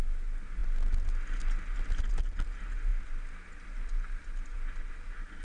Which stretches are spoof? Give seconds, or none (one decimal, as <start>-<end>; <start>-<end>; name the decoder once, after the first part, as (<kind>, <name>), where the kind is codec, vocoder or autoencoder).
none